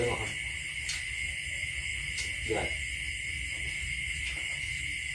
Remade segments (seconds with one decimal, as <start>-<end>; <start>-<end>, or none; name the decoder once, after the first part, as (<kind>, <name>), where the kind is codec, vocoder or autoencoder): none